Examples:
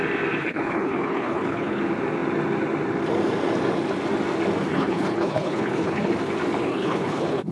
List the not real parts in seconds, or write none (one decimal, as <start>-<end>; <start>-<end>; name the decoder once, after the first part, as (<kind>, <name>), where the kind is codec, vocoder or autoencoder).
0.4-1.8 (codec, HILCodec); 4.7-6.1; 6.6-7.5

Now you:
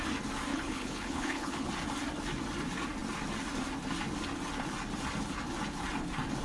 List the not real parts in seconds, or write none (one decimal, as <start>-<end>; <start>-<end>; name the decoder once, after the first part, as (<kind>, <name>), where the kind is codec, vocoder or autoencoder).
0.5-1.7 (codec, HILCodec)

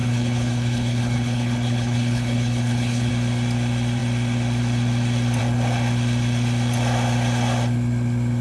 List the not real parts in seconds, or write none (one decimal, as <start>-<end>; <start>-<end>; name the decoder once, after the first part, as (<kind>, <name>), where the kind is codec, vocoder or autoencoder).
0.0-3.1 (codec, HILCodec)

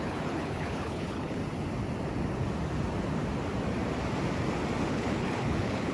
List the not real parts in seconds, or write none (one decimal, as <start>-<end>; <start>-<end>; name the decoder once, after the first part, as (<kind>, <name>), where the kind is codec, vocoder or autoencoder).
0.0-1.4 (codec, HILCodec); 4.9-5.9

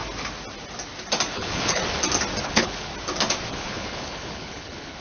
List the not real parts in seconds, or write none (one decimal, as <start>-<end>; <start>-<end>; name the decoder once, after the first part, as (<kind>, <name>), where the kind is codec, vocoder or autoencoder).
1.3-1.8 (codec, HILCodec); 2.4-2.9; 3.5-5.0

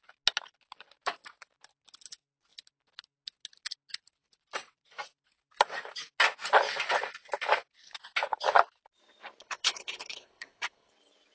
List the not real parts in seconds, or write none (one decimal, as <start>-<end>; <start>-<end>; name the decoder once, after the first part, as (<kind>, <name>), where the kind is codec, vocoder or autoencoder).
9.4-10.9 (codec, HILCodec)

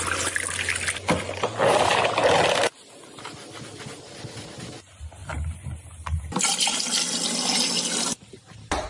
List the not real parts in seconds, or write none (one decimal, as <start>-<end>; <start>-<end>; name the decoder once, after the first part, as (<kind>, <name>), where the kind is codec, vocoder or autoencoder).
none